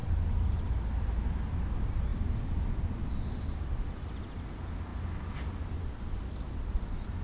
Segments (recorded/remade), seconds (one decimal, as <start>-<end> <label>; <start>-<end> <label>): 0.0-7.2 recorded